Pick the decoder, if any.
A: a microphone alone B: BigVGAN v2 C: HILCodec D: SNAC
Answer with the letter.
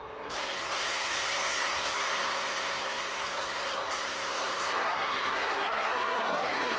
D